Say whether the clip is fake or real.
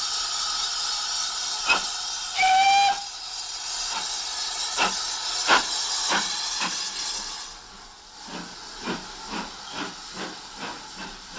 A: real